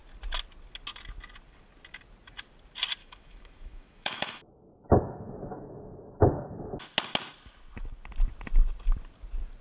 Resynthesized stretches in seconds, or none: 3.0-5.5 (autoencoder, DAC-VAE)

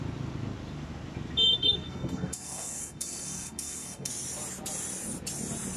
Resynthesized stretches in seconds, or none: 1.5-4.1 (codec, SNAC)